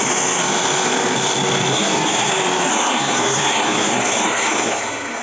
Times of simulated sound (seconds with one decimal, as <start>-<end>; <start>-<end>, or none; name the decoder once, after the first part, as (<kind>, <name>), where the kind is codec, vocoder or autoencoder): 1.7-2.3 (codec, SNAC); 2.7-5.2